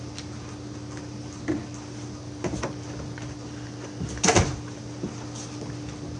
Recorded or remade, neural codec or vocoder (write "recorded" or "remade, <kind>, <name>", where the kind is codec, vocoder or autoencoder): recorded